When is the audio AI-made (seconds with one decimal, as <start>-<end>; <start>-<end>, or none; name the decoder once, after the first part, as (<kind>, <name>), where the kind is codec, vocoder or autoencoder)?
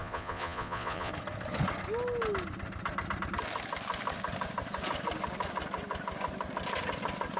0.0-1.1 (vocoder, Vocos)